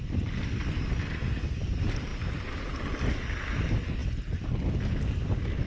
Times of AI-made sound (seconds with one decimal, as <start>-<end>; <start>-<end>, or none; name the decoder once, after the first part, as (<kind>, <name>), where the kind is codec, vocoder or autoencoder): none

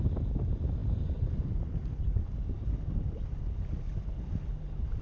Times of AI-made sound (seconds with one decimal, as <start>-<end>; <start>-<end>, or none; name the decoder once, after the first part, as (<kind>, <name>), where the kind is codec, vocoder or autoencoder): none